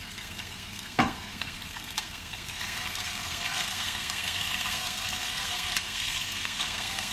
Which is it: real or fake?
fake